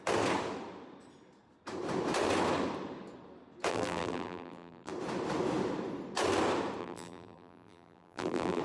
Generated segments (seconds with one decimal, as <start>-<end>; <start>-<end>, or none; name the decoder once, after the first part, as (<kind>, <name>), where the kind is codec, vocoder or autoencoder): 3.7-4.9 (vocoder, BigVGAN v2); 6.8-8.6